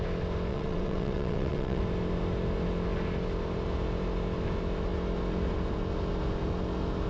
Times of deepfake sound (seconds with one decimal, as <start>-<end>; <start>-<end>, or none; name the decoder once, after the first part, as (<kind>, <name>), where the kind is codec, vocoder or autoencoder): 0.5-1.8 (vocoder, WaveNeXt)